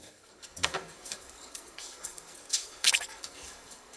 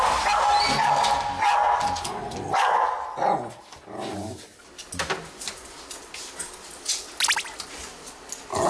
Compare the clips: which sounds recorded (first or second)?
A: second